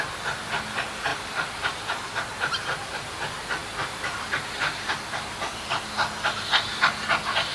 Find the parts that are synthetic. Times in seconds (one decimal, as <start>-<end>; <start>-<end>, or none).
none